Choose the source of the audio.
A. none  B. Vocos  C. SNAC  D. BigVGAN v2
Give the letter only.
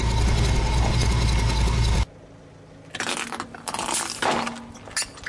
A